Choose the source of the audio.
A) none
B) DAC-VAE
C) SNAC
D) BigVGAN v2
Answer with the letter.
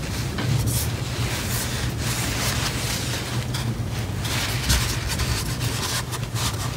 A